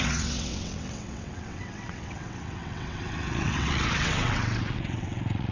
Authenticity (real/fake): fake